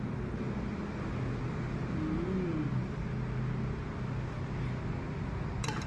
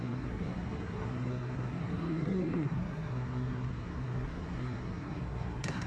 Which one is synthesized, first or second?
second